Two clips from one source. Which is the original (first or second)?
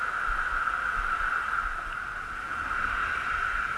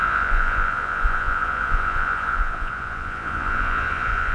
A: first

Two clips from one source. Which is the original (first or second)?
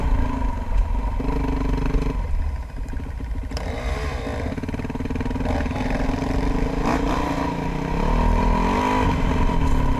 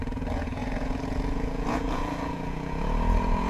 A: first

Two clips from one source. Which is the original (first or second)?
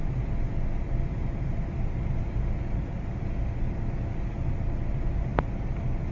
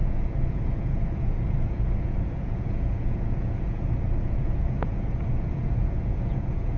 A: first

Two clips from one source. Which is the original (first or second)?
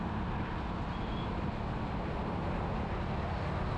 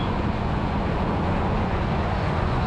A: first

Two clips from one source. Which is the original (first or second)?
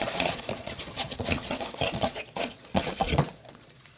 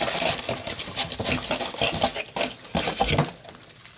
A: second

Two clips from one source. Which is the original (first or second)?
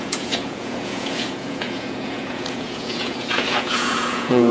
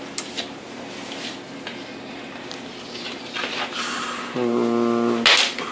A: second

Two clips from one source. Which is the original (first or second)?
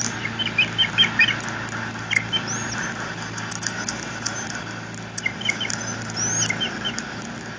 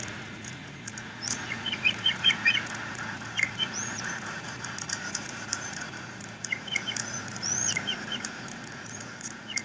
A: first